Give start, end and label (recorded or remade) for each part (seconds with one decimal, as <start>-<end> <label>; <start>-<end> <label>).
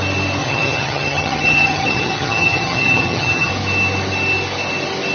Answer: 0.0-0.4 recorded; 0.4-3.5 remade; 3.5-5.1 recorded